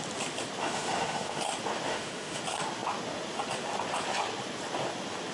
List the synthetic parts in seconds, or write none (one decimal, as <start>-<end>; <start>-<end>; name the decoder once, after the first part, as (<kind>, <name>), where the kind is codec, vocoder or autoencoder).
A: 0.6-1.4 (autoencoder, DAC-VAE); 1.9-2.4